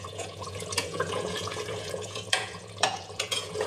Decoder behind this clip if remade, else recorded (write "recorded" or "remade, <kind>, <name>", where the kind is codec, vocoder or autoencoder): remade, vocoder, Vocos